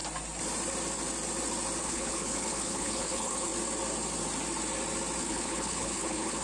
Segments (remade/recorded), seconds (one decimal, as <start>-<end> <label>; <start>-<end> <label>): 0.0-1.8 recorded; 1.8-3.5 remade; 3.5-5.2 recorded; 5.2-6.4 remade